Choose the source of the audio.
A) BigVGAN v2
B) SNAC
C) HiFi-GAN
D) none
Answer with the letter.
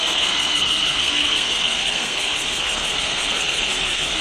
B